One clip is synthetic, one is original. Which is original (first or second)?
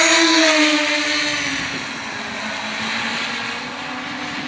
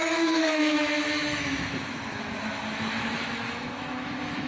first